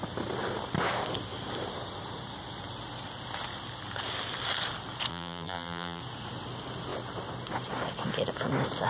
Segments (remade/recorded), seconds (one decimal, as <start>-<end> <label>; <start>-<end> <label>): 0.0-5.1 recorded; 5.1-6.0 remade; 6.0-8.9 recorded

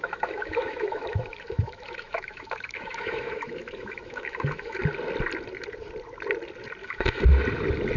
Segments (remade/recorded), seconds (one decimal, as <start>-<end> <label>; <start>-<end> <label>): 0.0-4.8 remade; 4.8-6.8 recorded; 6.8-7.3 remade; 7.3-8.0 recorded

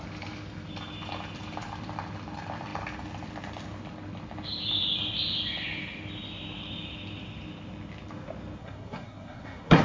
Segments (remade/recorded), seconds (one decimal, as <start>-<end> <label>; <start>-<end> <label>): 0.0-8.6 recorded; 8.6-9.8 remade

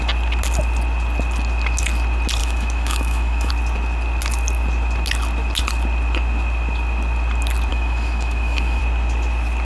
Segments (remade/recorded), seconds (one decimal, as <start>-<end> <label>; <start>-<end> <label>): 0.0-2.4 recorded; 2.4-3.5 remade; 3.5-7.7 recorded; 7.7-8.8 remade; 8.8-9.6 recorded

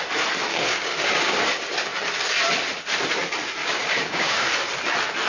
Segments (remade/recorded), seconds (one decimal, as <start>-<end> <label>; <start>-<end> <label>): 0.0-0.5 recorded; 0.5-1.4 remade; 1.4-3.6 recorded; 3.6-4.5 remade; 4.5-5.3 recorded